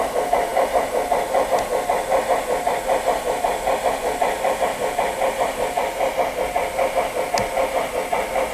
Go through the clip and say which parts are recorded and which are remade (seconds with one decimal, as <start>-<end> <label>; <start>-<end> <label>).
0.0-8.5 recorded